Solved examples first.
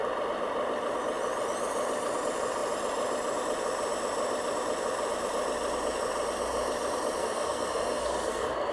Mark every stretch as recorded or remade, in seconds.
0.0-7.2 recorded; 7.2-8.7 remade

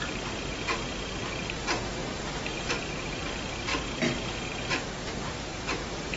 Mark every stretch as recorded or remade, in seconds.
0.0-2.0 remade; 2.0-2.7 recorded; 2.7-3.7 remade; 3.7-5.1 recorded; 5.1-6.2 remade

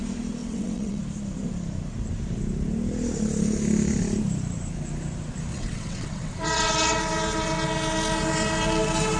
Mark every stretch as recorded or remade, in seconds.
0.0-0.4 recorded; 0.4-1.0 remade; 1.0-5.5 recorded; 5.5-7.0 remade; 7.0-9.2 recorded

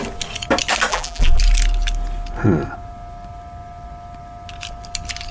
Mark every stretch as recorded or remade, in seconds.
0.0-0.9 recorded; 0.9-1.4 remade; 1.4-5.3 recorded

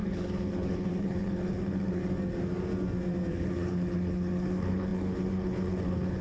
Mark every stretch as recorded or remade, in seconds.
0.0-2.0 remade; 2.0-3.3 recorded; 3.3-6.2 remade

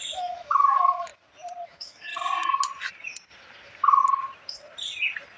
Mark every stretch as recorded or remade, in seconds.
0.0-1.1 remade; 1.1-1.7 recorded; 1.7-2.1 remade; 2.1-5.4 recorded

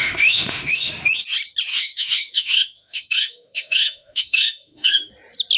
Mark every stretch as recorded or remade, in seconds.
0.0-0.9 remade; 0.9-1.7 recorded; 1.7-5.1 remade; 5.1-5.6 recorded